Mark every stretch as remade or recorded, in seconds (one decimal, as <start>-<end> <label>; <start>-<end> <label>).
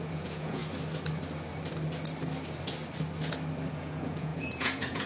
0.0-0.6 remade; 0.6-3.7 recorded; 3.7-5.1 remade